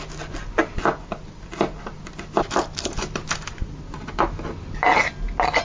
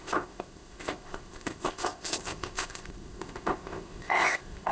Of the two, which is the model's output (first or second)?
second